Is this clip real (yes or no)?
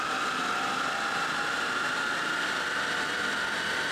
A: yes